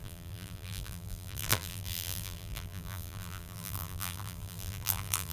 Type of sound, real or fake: fake